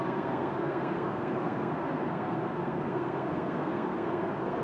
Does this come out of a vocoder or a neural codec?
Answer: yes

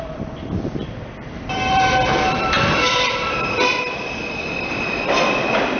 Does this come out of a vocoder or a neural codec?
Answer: yes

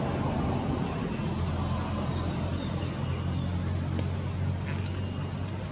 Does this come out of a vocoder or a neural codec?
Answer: no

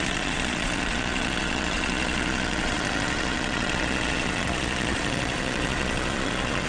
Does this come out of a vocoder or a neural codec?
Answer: yes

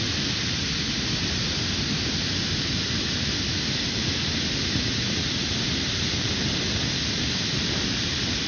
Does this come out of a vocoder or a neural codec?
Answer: no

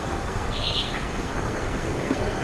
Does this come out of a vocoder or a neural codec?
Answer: yes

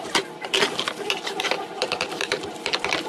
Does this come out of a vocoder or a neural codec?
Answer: yes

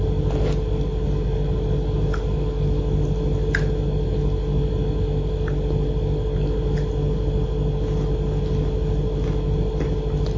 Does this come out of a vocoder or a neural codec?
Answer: no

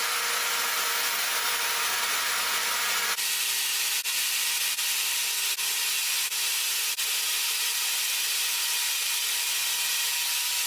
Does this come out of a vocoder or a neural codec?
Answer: no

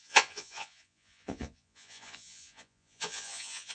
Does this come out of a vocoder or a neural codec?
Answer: yes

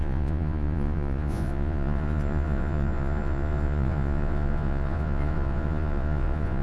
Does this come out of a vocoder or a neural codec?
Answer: yes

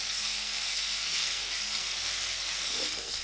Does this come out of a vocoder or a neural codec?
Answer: yes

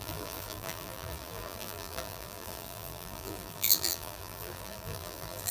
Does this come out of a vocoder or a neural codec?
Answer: yes